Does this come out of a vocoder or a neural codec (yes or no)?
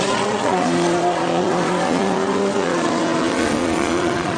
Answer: yes